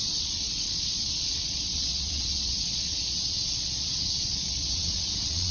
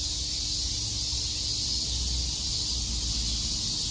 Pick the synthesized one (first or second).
first